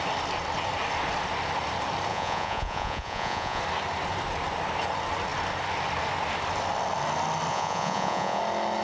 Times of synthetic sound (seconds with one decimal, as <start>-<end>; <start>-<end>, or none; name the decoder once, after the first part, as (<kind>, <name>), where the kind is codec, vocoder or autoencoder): 2.1-3.6 (vocoder, Vocos); 7.5-8.4